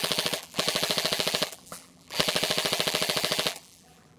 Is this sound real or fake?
fake